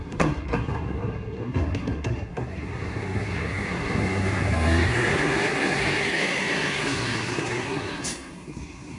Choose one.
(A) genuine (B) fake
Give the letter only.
B